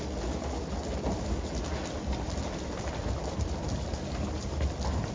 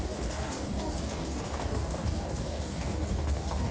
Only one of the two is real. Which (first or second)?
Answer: first